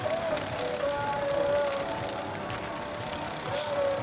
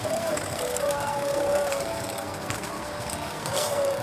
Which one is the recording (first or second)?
first